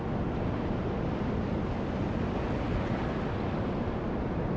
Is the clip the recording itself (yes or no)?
yes